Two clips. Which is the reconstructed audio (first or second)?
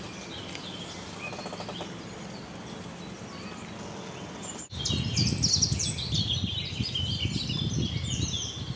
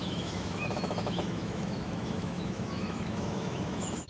second